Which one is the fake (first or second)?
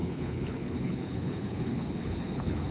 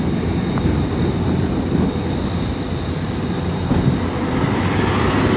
first